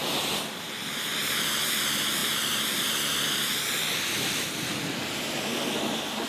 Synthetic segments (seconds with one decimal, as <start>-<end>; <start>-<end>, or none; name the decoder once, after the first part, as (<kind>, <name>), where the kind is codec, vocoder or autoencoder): 1.2-1.8 (vocoder, BigVGAN v2); 2.2-3.6